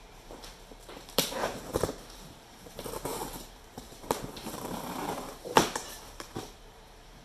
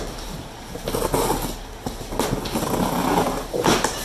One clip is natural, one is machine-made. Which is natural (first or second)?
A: second